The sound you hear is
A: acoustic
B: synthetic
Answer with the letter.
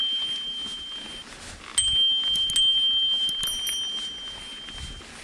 A